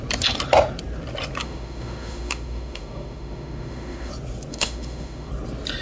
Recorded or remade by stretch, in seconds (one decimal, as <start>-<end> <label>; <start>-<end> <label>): 0.0-1.4 recorded; 1.4-4.1 remade; 4.1-4.5 recorded; 4.5-5.3 remade; 5.3-5.8 recorded